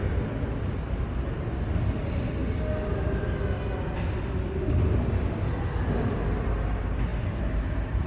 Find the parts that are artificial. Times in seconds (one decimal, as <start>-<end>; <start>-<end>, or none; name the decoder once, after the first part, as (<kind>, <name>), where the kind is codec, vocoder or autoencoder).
none